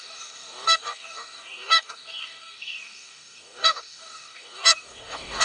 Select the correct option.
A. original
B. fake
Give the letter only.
B